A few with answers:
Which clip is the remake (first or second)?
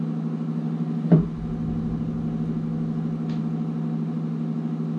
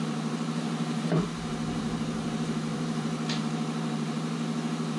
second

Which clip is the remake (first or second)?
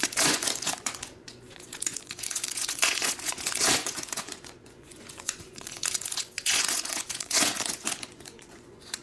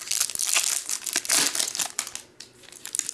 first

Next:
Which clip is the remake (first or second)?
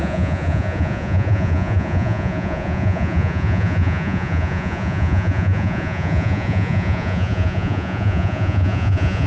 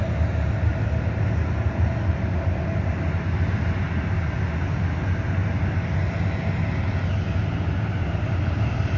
first